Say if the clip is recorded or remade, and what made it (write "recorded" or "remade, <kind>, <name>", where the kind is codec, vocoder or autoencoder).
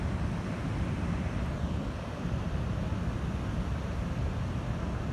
recorded